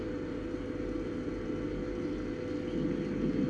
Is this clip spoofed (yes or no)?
no